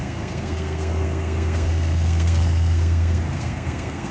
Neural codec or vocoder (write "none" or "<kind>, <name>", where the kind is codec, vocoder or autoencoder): codec, SNAC